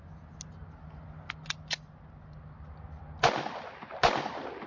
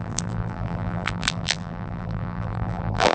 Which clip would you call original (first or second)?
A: first